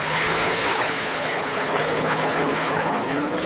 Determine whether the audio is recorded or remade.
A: remade